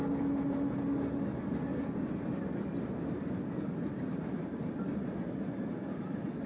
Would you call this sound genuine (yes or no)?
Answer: yes